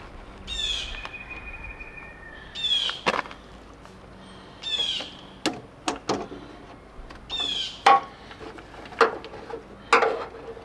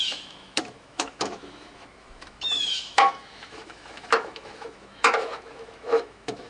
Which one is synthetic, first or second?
second